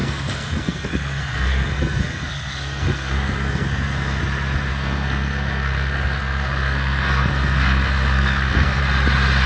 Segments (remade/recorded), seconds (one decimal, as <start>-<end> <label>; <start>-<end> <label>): 0.0-4.2 remade; 4.2-4.7 recorded; 4.7-8.8 remade; 8.8-9.5 recorded